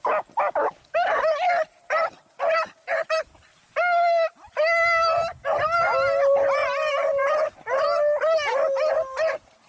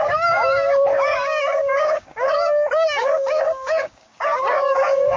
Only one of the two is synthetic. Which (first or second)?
second